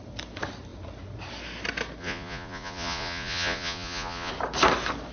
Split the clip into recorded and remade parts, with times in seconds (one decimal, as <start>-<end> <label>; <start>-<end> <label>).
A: 0.0-2.0 recorded; 2.0-4.3 remade; 4.3-5.1 recorded